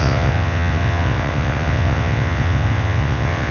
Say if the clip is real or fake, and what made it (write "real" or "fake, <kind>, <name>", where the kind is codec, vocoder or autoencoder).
fake, vocoder, WaveNeXt